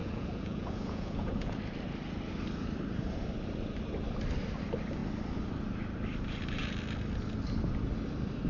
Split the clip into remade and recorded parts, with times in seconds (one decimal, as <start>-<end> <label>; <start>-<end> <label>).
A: 0.0-1.6 remade; 1.6-8.5 recorded

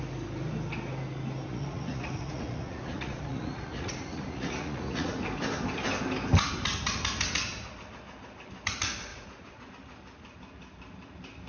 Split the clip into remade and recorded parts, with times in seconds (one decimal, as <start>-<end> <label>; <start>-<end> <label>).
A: 0.0-1.5 recorded; 1.5-5.1 remade; 5.1-9.1 recorded; 9.1-9.7 remade; 9.7-11.5 recorded